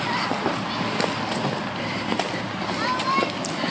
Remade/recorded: recorded